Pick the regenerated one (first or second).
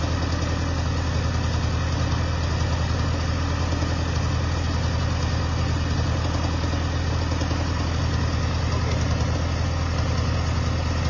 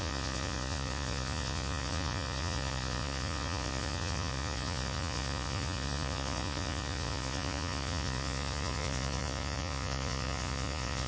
second